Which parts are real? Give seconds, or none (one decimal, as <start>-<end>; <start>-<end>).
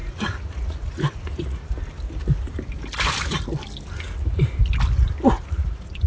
1.6-5.3